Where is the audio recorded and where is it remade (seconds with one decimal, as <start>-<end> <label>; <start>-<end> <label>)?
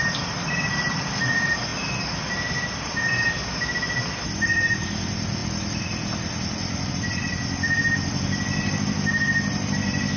0.0-10.2 recorded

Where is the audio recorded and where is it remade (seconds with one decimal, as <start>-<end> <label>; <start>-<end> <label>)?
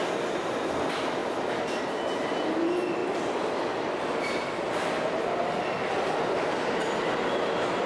0.0-7.9 recorded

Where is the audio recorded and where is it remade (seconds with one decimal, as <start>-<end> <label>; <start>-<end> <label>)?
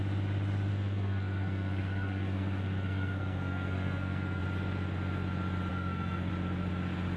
0.0-0.7 recorded; 0.7-4.4 remade; 4.4-5.7 recorded; 5.7-6.3 remade; 6.3-7.2 recorded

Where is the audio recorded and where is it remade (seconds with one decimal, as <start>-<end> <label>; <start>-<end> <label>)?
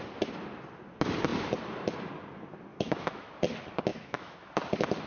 0.0-2.7 recorded; 2.7-3.3 remade; 3.3-3.9 recorded; 3.9-4.5 remade; 4.5-5.1 recorded